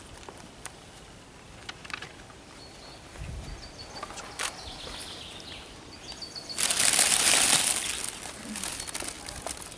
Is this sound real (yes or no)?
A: yes